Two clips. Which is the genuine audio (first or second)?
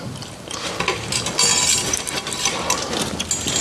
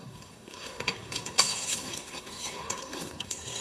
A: first